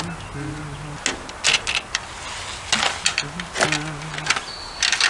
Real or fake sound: real